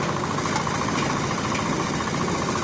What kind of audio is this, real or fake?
real